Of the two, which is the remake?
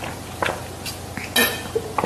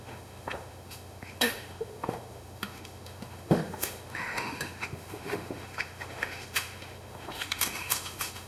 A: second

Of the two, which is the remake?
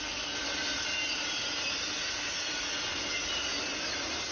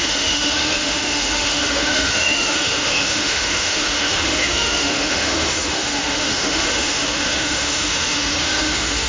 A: second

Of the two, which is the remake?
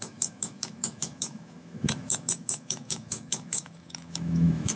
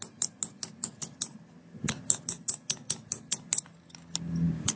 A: first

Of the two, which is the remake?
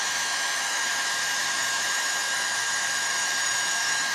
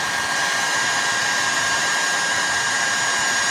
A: first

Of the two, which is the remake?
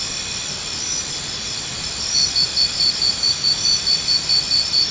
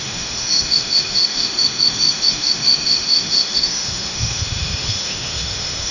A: second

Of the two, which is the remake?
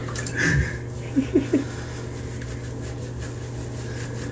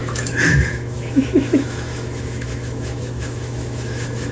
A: second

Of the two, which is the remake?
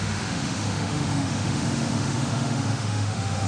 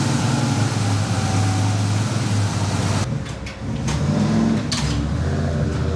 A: first